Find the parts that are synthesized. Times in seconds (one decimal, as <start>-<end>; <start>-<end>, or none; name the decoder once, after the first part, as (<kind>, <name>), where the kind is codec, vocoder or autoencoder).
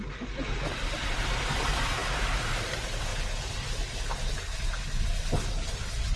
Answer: none